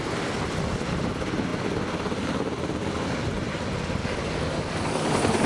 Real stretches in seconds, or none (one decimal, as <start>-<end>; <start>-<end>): 0.0-4.0